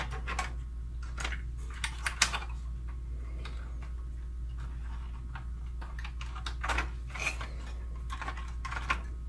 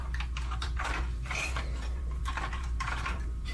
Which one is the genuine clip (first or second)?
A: first